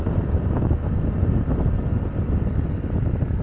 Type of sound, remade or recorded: recorded